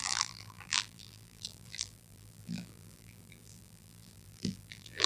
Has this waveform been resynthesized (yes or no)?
yes